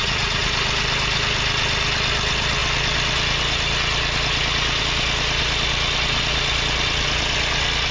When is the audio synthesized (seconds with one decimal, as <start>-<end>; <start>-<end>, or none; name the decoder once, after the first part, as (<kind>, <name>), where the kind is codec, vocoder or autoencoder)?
0.0-0.5 (vocoder, Vocos)